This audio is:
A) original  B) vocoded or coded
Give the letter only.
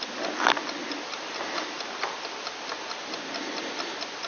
A